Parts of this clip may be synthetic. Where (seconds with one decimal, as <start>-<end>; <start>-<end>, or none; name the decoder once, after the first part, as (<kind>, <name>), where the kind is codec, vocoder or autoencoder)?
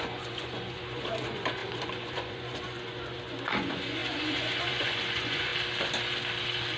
0.0-5.5 (vocoder, Vocos)